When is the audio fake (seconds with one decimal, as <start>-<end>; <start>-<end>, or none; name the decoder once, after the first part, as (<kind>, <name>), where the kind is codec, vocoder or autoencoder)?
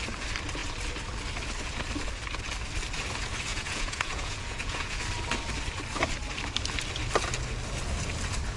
3.5-5.0 (vocoder, Vocos)